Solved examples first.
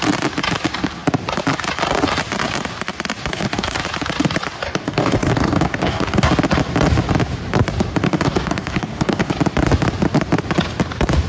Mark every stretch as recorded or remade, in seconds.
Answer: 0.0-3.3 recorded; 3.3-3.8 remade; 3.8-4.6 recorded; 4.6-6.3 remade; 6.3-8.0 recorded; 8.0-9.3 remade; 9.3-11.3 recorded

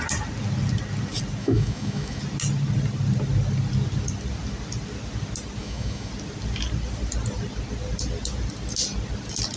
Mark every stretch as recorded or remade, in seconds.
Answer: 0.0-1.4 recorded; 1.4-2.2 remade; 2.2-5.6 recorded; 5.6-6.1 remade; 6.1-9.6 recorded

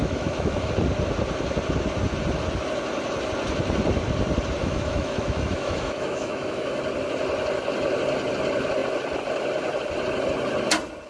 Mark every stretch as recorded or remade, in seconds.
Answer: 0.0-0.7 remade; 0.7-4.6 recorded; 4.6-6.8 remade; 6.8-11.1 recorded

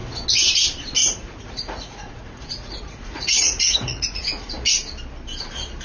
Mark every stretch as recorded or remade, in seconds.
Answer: 0.0-1.0 recorded; 1.0-4.5 remade; 4.5-5.8 recorded

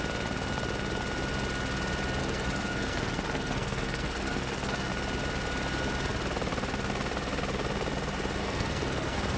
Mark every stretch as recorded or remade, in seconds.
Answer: 0.0-2.2 recorded; 2.2-4.9 remade; 4.9-8.4 recorded; 8.4-9.4 remade

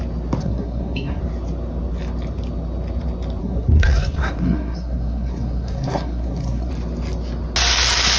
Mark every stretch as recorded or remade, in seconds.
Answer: 0.0-0.4 recorded; 0.4-1.2 remade; 1.2-3.4 recorded; 3.4-6.7 remade; 6.7-8.2 recorded